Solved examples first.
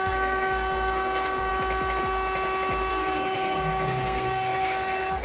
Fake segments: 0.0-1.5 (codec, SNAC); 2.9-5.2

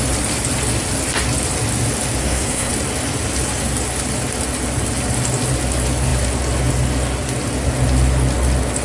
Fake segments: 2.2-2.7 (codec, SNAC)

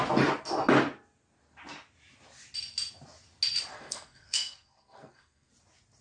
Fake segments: 3.7-5.5 (codec, SNAC)

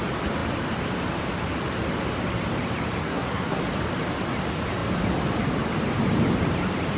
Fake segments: 3.0-3.6 (codec, SNAC)

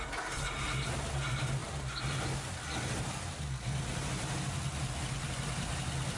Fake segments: none

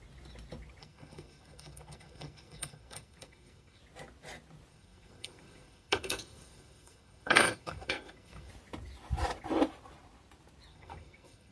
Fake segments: 0.8-3.8 (codec, SNAC); 4.7-8.5; 10.7-11.5